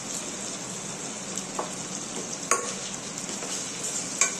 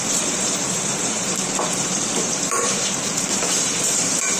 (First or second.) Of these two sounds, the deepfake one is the second